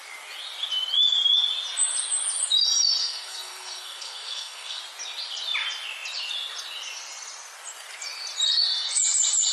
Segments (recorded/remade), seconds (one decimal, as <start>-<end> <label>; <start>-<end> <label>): 0.0-3.0 recorded; 3.0-4.8 remade; 4.8-9.5 recorded